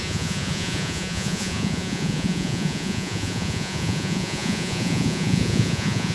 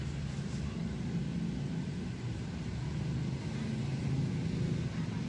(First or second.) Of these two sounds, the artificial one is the first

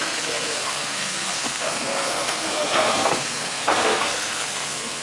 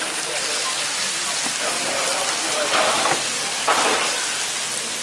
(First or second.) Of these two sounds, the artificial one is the first